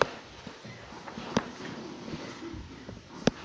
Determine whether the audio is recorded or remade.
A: remade